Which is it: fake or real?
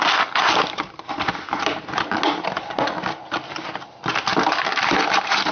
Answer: real